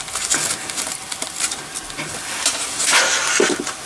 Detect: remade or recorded recorded